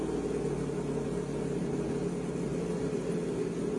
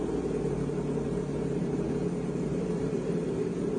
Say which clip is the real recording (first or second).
first